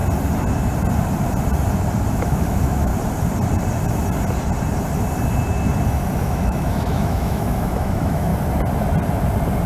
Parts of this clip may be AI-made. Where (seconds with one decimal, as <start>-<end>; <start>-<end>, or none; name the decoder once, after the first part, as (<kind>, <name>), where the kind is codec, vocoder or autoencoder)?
2.1-2.9 (autoencoder, DAC-VAE); 6.2-8.3